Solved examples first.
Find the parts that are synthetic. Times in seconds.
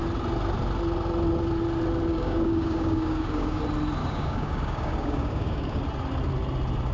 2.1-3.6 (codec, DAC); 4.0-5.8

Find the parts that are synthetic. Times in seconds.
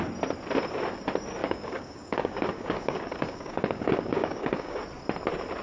1.4-4.8 (codec, DAC)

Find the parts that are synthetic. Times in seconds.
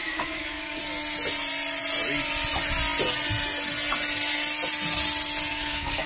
0.0-0.8 (codec, DAC); 5.5-6.1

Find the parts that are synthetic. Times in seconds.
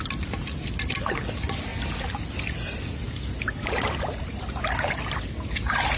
none